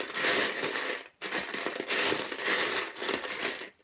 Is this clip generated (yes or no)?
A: no